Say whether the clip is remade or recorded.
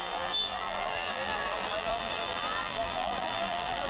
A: remade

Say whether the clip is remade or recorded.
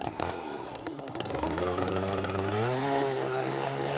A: remade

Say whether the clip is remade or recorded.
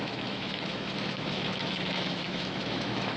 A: remade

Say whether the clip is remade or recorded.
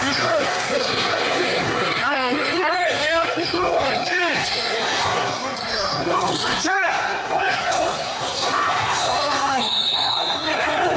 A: remade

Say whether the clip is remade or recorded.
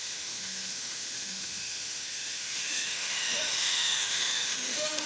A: remade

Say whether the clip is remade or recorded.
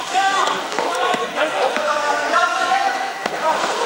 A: remade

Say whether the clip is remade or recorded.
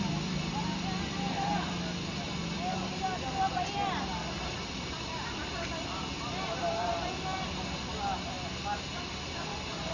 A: recorded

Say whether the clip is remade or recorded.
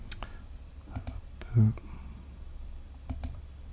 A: recorded